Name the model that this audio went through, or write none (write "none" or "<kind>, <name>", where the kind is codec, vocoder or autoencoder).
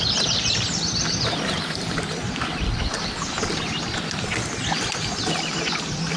none